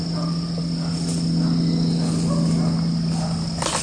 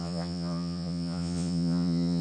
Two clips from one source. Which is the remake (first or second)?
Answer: second